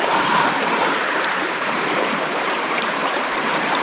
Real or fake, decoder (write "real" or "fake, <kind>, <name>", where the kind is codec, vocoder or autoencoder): fake, vocoder, BigVGAN v2